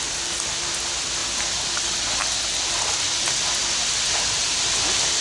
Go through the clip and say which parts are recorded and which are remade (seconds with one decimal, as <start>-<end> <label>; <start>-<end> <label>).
0.0-5.2 recorded